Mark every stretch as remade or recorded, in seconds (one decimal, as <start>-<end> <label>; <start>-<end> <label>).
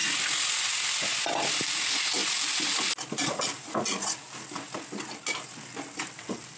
0.0-2.2 recorded; 2.2-2.9 remade; 2.9-6.6 recorded